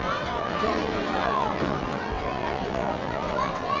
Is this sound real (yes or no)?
no